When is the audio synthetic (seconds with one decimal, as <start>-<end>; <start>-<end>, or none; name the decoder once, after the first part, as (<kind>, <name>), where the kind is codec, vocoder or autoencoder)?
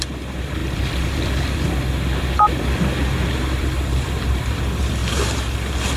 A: 0.0-5.0 (vocoder, BigVGAN v2)